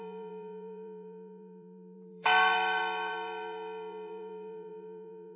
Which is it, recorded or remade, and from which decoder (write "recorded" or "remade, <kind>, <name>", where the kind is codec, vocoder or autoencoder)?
remade, vocoder, BigVGAN v2